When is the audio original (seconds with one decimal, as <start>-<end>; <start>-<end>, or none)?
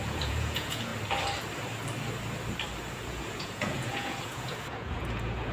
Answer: 0.9-2.9